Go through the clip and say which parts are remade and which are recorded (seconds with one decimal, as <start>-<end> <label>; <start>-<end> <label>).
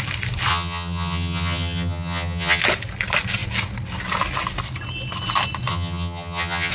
0.0-0.5 recorded; 0.5-2.6 remade; 2.6-5.7 recorded; 5.7-6.7 remade